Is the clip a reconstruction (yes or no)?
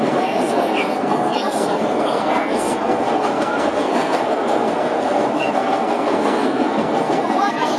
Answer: yes